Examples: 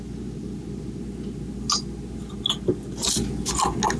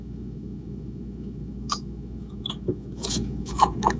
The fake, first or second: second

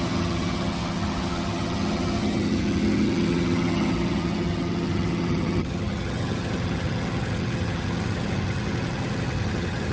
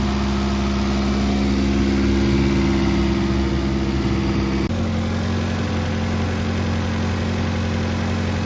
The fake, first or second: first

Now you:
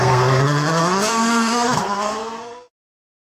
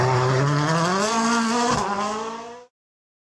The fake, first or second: first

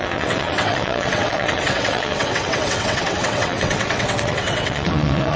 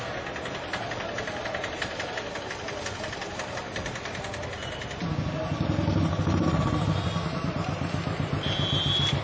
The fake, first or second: first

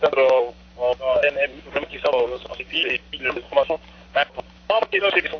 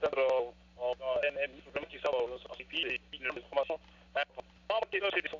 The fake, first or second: first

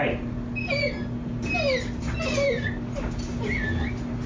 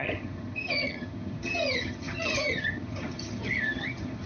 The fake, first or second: second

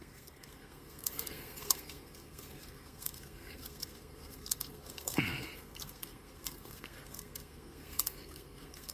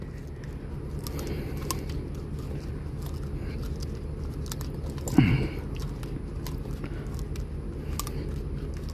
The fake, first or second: first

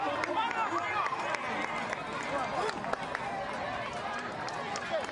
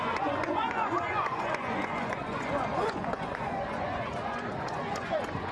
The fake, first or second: second